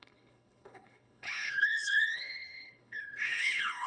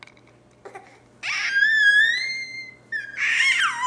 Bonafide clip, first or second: second